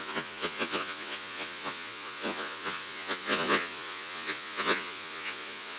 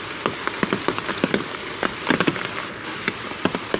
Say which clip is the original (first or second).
second